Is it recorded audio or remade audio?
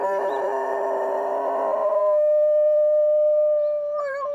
remade